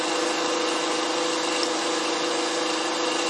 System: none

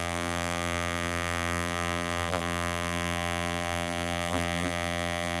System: vocoder, BigVGAN v2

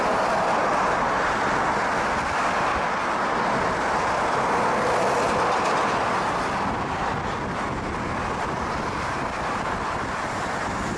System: none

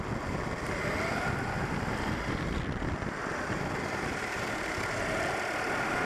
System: none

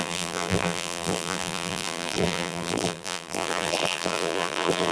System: vocoder, BigVGAN v2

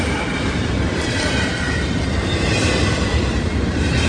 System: vocoder, BigVGAN v2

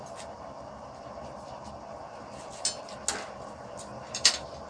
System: none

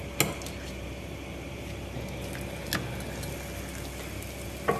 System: none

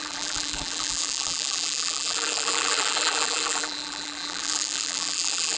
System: vocoder, BigVGAN v2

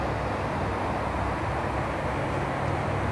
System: none